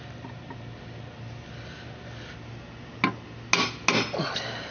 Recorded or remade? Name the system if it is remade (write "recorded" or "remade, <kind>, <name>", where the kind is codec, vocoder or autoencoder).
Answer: recorded